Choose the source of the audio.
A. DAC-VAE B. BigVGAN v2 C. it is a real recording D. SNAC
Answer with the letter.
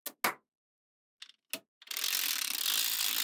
C